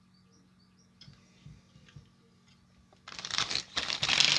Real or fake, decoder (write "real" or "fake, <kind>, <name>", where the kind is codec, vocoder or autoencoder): real